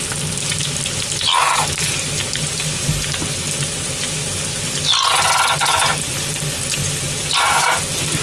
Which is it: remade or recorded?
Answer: recorded